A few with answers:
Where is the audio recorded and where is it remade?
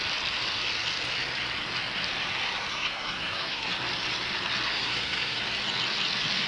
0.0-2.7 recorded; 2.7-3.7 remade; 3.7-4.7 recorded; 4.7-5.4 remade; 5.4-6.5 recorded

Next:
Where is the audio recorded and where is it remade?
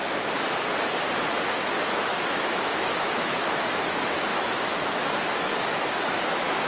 0.0-2.0 recorded; 2.0-6.7 remade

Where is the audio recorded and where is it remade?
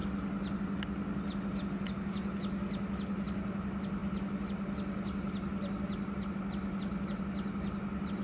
0.0-8.2 recorded